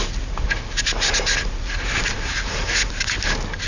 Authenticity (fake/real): real